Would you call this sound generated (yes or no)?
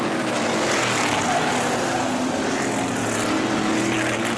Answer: no